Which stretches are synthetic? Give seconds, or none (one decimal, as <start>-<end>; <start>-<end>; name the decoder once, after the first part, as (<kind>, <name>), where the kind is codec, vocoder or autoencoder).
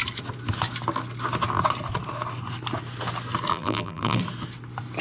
3.5-4.2 (vocoder, BigVGAN v2)